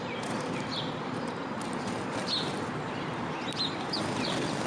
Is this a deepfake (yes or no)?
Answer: no